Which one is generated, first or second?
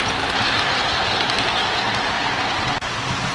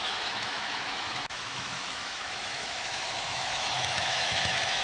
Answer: second